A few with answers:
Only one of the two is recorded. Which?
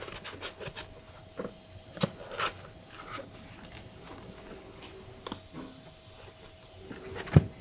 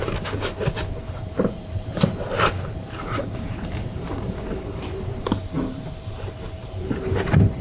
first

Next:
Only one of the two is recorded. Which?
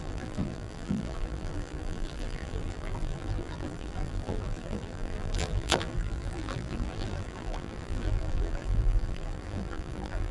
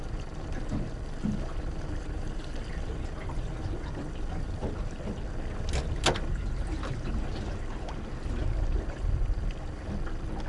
second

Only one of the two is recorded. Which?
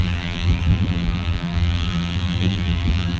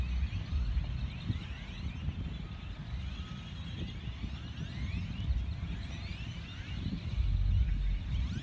second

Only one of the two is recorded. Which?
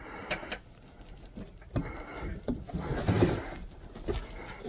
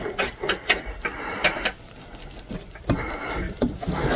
second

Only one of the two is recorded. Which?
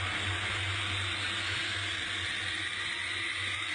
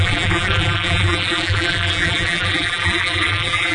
first